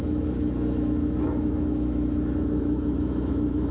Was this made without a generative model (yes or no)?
no